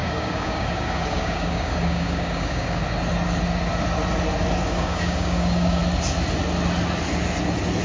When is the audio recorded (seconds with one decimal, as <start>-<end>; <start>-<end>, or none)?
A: 2.8-4.7; 5.8-7.8